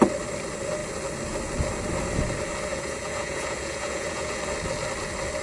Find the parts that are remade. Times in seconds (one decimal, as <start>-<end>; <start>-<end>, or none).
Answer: 2.7-4.4